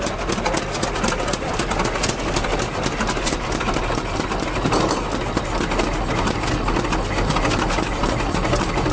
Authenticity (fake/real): real